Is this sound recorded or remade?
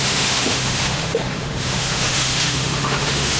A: remade